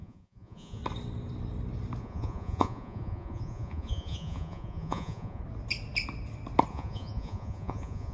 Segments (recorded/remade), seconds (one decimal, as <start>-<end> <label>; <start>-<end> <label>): 0.0-0.8 remade; 0.8-2.0 recorded; 2.0-5.4 remade; 5.4-6.7 recorded; 6.7-8.1 remade